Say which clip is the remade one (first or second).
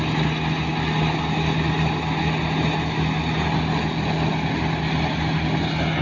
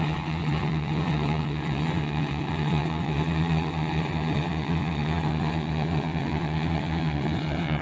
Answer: second